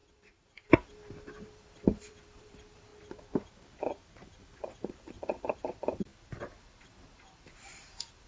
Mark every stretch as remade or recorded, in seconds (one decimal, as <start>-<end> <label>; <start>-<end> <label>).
0.0-2.9 remade; 2.9-4.9 recorded; 4.9-8.3 remade